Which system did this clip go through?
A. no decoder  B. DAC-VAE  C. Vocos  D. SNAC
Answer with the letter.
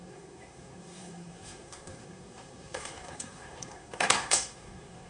D